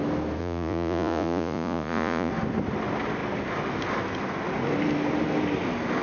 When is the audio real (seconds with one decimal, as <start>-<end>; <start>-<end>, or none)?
0.0-0.4; 2.3-6.0